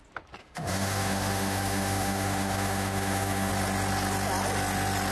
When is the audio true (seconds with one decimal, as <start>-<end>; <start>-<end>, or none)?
0.0-0.4; 3.5-5.1